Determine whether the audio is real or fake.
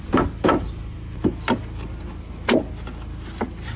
real